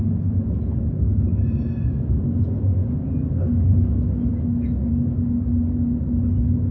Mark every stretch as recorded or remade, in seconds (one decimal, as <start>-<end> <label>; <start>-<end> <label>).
0.0-6.7 recorded